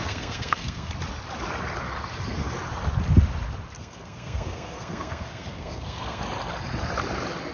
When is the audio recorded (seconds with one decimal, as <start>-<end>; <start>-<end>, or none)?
0.9-3.8; 6.2-7.5